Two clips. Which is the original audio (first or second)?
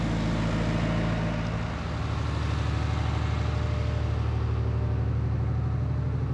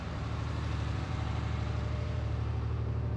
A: first